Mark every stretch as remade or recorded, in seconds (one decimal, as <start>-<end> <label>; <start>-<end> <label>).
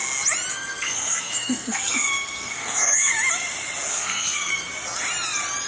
0.0-0.5 recorded; 0.5-3.1 remade; 3.1-3.9 recorded; 3.9-4.5 remade; 4.5-5.7 recorded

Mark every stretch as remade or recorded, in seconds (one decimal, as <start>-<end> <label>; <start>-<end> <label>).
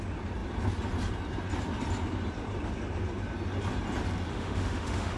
0.0-4.3 recorded; 4.3-5.2 remade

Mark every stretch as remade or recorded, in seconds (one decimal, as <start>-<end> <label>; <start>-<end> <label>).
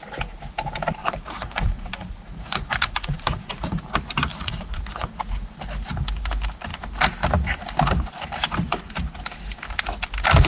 0.0-1.0 recorded; 1.0-3.8 remade; 3.8-4.3 recorded; 4.3-5.5 remade; 5.5-10.5 recorded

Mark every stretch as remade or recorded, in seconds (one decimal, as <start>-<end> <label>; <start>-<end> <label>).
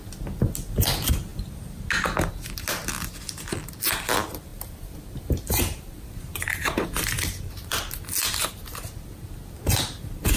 0.0-4.5 recorded; 4.5-7.9 remade; 7.9-10.4 recorded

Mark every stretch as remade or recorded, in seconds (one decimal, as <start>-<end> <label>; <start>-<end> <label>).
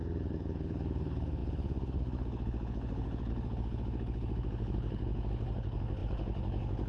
0.0-6.9 remade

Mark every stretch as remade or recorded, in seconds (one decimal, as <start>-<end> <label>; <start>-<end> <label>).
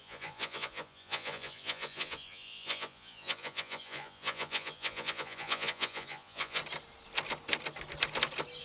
0.0-6.6 remade; 6.6-8.6 recorded